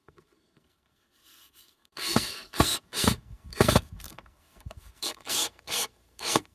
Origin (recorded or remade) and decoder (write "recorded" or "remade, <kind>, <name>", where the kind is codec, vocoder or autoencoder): remade, codec, SNAC